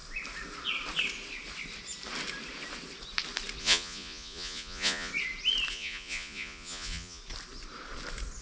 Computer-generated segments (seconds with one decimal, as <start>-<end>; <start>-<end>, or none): 3.6-5.1; 5.7-7.2